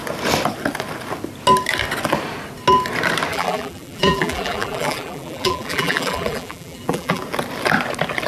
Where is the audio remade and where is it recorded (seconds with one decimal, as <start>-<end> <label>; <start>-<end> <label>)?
0.0-3.3 recorded; 3.3-7.2 remade; 7.2-8.3 recorded